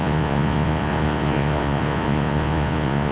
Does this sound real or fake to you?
fake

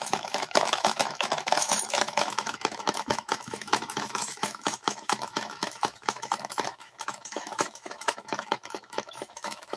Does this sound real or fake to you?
fake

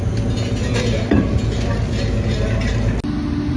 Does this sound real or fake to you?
real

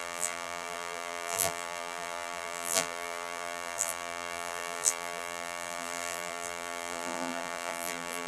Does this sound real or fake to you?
fake